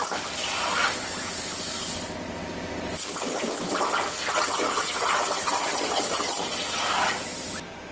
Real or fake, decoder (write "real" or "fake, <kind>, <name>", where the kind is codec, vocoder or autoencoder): real